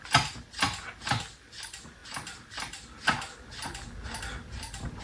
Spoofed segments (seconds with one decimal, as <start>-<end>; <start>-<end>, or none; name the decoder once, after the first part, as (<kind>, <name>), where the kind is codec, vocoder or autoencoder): none